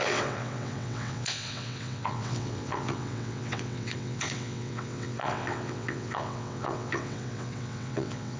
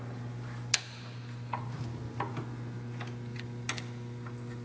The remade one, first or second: first